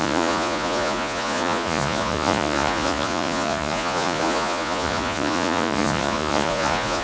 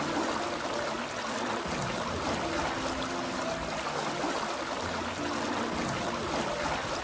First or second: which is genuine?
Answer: second